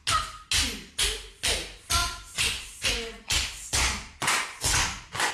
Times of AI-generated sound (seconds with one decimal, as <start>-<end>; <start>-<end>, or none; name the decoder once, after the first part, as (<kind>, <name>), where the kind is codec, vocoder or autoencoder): 2.0-5.3 (vocoder, Vocos)